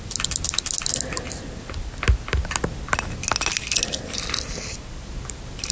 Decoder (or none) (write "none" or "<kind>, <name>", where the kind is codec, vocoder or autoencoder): none